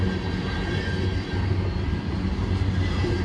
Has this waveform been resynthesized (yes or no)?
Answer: no